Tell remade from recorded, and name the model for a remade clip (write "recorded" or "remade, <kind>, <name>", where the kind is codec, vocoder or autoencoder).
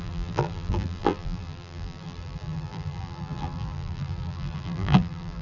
remade, vocoder, BigVGAN v2